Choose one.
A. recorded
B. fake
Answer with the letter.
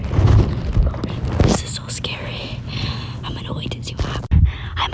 A